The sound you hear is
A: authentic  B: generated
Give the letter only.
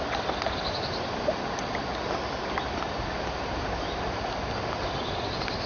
B